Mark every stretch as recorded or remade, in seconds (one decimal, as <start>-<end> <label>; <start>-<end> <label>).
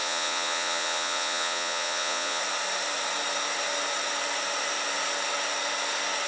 0.0-2.4 remade; 2.4-6.3 recorded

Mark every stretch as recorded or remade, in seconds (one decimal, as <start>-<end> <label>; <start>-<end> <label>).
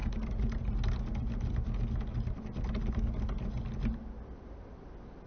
0.0-5.3 recorded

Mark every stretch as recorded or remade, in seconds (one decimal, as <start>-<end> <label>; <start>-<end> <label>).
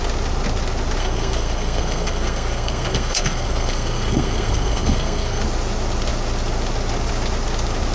0.0-1.0 recorded; 1.0-5.4 remade; 5.4-7.9 recorded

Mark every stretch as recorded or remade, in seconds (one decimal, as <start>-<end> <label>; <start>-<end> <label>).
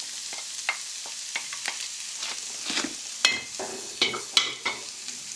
0.0-3.7 recorded; 3.7-4.3 remade; 4.3-5.4 recorded